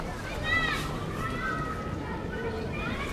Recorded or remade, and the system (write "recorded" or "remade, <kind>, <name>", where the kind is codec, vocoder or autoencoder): recorded